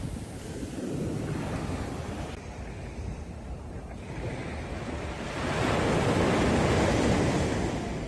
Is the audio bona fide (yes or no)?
yes